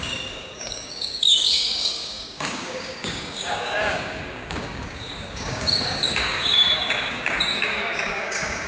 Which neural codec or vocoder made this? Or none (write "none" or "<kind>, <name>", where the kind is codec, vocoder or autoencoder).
codec, DAC